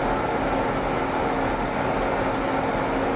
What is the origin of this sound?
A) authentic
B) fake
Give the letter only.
A